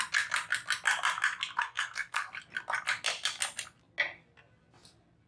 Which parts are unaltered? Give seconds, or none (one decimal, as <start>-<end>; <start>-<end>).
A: 0.0-1.6; 2.3-5.3